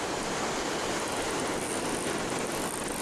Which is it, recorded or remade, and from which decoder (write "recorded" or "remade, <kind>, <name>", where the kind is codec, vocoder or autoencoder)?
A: recorded